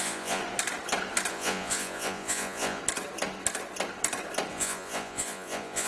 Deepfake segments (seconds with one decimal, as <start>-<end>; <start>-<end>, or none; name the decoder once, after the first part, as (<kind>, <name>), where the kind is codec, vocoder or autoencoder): 0.0-0.4 (vocoder, Vocos); 1.3-2.8; 4.5-5.9